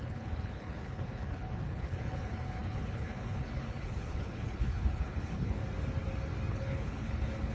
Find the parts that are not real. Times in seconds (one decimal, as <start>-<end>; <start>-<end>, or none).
0.0-5.6; 6.5-7.5

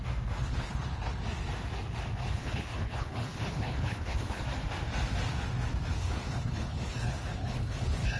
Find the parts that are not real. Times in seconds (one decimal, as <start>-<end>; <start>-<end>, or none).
0.4-1.2; 2.2-4.4; 6.0-8.2